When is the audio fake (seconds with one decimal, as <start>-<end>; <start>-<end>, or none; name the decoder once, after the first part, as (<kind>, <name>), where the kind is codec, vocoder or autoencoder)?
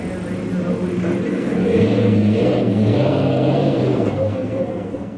1.3-5.2 (codec, SNAC)